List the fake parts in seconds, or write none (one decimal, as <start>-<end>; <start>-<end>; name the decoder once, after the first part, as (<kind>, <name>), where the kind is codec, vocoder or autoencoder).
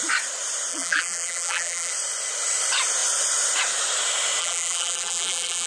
0.7-1.9 (vocoder, BigVGAN v2); 4.4-5.7